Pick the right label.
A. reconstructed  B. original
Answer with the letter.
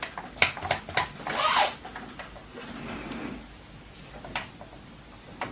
B